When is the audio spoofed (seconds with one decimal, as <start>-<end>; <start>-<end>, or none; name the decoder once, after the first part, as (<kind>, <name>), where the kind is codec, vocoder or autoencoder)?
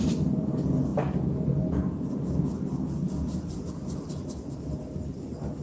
none